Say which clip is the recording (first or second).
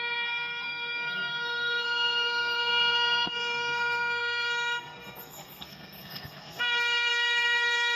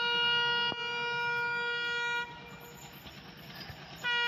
second